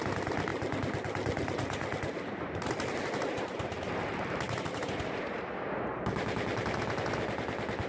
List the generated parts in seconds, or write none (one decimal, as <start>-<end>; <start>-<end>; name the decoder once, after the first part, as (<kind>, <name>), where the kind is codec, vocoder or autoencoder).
none